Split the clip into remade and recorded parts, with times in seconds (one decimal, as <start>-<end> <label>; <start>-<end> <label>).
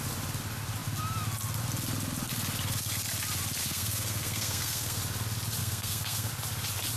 0.0-3.6 recorded; 3.6-5.0 remade; 5.0-5.6 recorded; 5.6-6.3 remade; 6.3-7.0 recorded